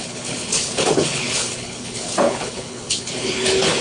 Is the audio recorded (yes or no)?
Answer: no